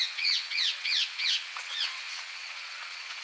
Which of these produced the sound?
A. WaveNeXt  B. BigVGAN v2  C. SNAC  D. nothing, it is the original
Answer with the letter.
A